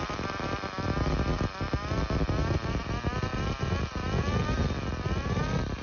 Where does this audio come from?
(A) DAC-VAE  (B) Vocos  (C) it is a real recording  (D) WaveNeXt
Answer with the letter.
C